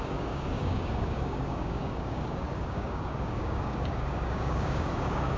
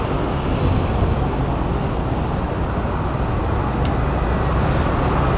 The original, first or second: second